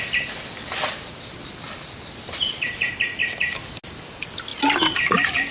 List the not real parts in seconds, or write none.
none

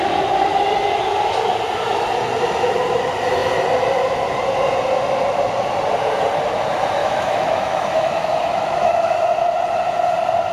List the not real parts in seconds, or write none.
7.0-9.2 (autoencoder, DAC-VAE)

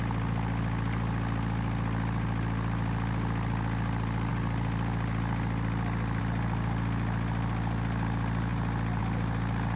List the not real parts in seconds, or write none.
4.3-6.2 (vocoder, BigVGAN v2)